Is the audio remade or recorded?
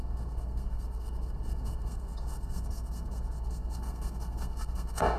remade